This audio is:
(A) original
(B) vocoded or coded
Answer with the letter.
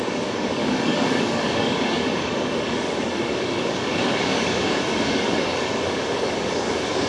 B